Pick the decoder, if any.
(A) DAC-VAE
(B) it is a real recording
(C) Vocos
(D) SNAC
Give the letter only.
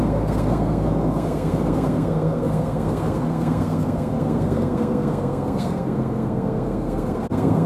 D